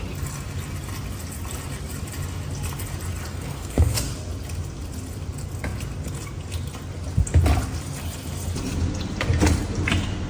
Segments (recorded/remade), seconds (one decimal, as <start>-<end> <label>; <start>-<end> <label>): 0.0-3.3 recorded; 3.3-4.1 remade; 4.1-10.3 recorded